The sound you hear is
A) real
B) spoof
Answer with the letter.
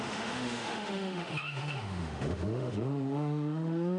B